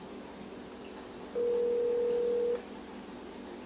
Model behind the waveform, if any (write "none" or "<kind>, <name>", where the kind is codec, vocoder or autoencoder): none